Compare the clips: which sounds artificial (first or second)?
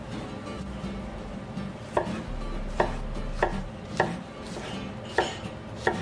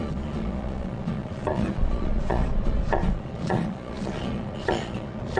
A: second